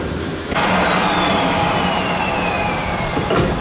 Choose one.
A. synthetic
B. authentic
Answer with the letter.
B